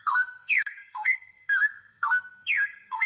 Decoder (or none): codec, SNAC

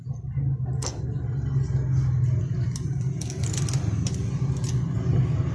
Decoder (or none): none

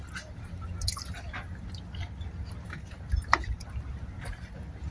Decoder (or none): none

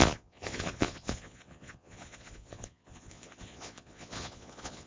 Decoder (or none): vocoder, Vocos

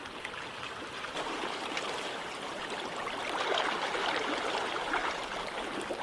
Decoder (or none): vocoder, BigVGAN v2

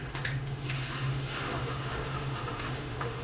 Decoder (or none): autoencoder, DAC-VAE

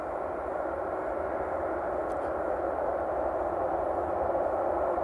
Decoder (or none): none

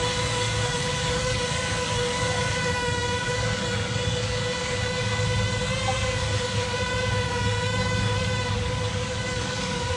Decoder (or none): codec, DAC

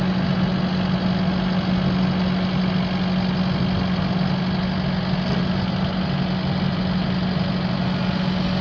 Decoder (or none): none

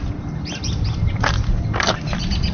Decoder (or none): none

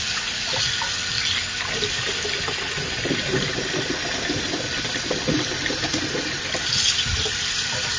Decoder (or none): none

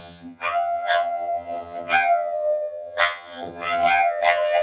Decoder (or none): vocoder, HiFi-GAN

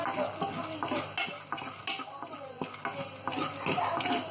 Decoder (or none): none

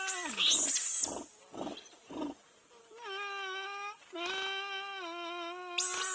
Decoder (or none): none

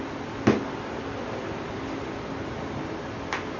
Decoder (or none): none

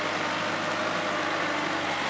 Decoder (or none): none